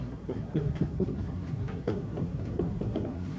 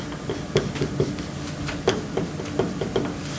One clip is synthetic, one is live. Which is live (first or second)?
second